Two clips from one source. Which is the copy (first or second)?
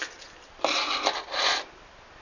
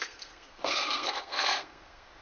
second